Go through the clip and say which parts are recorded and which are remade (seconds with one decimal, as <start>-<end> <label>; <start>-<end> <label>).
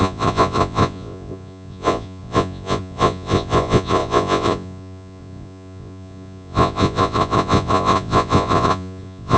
0.0-9.4 remade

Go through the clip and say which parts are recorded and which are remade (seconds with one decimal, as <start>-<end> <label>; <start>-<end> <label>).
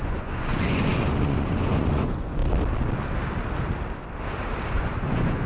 0.0-2.4 remade; 2.4-4.7 recorded; 4.7-5.5 remade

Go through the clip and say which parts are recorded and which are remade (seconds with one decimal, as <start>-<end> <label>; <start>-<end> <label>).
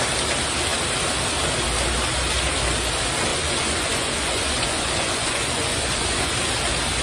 0.0-3.3 recorded; 3.3-6.3 remade; 6.3-7.0 recorded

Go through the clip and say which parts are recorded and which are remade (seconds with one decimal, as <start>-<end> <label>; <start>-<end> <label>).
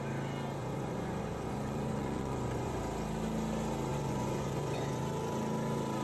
0.0-0.6 recorded; 0.6-2.8 remade; 2.8-3.9 recorded; 3.9-5.0 remade; 5.0-6.0 recorded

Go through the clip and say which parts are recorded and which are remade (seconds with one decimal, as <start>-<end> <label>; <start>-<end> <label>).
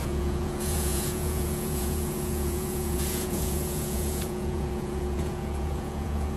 0.0-6.4 remade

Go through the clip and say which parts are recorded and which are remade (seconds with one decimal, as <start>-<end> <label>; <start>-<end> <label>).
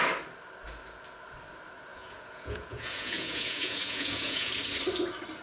0.0-1.9 recorded; 1.9-4.5 remade; 4.5-5.4 recorded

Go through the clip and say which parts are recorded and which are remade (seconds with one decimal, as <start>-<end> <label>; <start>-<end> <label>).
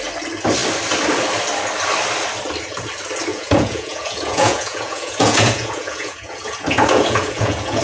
0.0-3.3 recorded; 3.3-7.8 remade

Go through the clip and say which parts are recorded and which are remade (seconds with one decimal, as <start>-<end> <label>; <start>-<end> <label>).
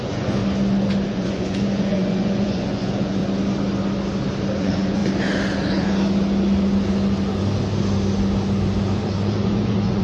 0.0-0.4 remade; 0.4-1.1 recorded; 1.1-3.2 remade; 3.2-4.6 recorded; 4.6-5.0 remade; 5.0-8.8 recorded; 8.8-10.0 remade